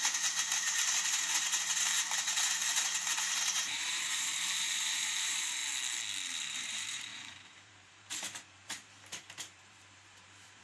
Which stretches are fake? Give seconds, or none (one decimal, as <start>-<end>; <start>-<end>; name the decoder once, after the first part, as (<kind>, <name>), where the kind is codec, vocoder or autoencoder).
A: 0.0-5.6 (vocoder, BigVGAN v2); 6.4-10.6